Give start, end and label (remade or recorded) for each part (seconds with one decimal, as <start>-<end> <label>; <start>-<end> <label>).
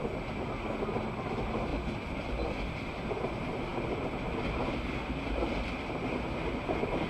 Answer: 0.0-7.1 recorded